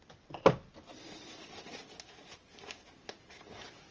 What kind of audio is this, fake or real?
real